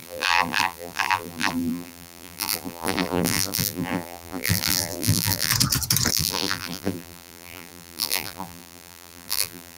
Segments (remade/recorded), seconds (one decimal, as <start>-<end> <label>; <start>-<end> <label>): 0.0-5.5 remade; 5.5-6.1 recorded; 6.1-9.8 remade